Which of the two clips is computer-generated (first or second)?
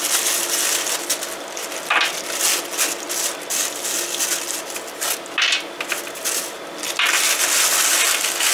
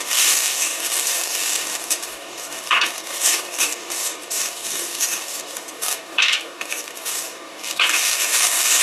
second